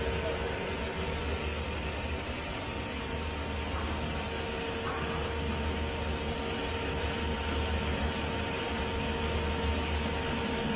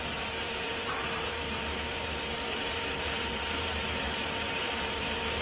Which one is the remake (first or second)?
second